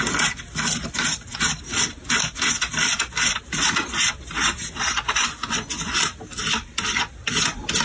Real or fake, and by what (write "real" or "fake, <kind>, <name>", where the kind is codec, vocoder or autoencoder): real